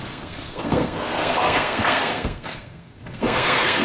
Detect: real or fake fake